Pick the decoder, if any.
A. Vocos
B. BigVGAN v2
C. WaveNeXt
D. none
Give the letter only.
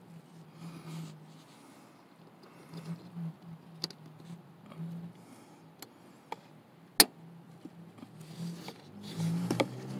D